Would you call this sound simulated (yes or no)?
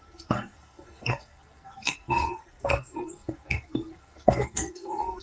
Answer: yes